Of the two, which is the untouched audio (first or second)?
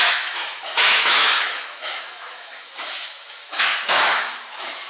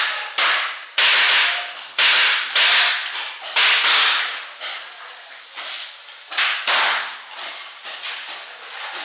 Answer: second